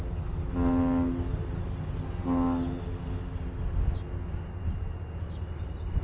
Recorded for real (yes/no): yes